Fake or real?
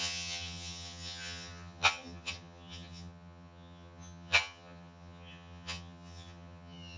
fake